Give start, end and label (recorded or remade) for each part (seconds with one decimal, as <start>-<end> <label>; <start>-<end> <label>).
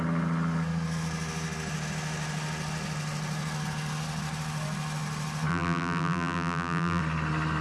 0.0-5.5 recorded; 5.5-7.0 remade; 7.0-7.6 recorded